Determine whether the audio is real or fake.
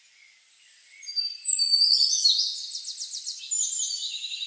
real